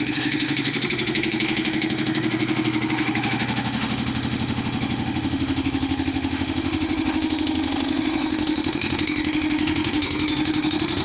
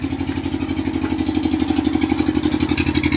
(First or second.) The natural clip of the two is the second